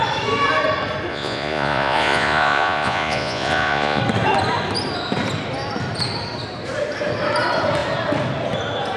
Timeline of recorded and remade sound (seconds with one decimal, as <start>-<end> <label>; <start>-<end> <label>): 0.0-1.1 recorded; 1.1-4.0 remade; 4.0-9.0 recorded